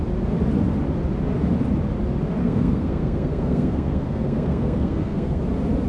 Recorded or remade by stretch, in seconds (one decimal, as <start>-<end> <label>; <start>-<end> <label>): 0.0-2.4 recorded; 2.4-5.4 remade; 5.4-5.9 recorded

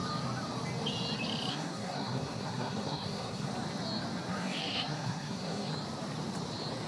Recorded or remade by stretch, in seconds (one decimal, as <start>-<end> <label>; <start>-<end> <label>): 0.0-1.5 recorded; 1.5-3.5 remade; 3.5-4.3 recorded; 4.3-5.7 remade; 5.7-6.9 recorded

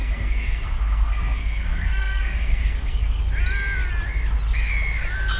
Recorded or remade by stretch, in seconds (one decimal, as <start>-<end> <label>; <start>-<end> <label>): 0.0-3.2 remade; 3.2-5.4 recorded

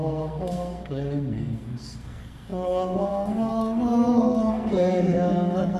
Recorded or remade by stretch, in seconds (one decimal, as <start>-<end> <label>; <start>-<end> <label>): 0.0-5.8 remade

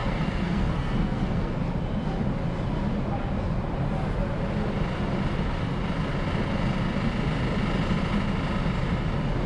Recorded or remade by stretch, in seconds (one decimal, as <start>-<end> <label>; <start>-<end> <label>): 0.0-1.6 remade; 1.6-9.5 recorded

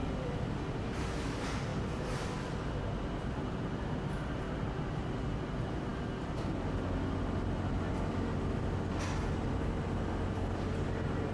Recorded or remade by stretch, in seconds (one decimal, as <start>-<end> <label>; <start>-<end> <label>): 0.0-11.3 recorded